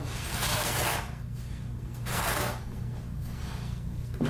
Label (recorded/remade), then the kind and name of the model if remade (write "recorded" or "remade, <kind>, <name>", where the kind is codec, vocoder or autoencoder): remade, codec, SNAC